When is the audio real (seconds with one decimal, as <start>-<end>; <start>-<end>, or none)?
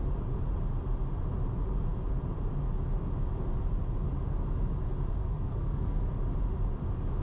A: 0.0-5.2; 6.0-7.2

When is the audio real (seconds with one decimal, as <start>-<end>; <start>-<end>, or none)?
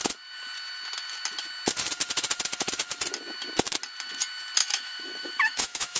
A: 0.0-4.6